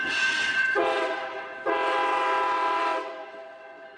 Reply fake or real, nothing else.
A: fake